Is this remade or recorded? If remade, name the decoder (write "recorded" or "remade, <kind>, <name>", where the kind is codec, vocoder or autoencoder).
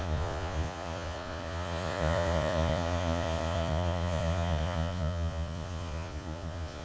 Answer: remade, vocoder, Vocos